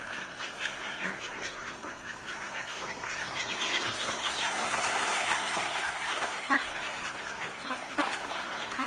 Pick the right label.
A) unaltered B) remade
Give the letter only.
B